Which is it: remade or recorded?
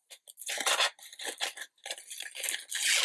recorded